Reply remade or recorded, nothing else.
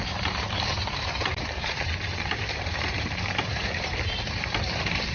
remade